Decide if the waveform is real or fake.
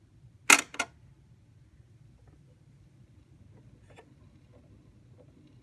real